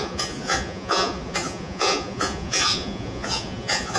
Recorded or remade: remade